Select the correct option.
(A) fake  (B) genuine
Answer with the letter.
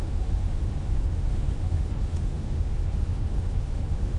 A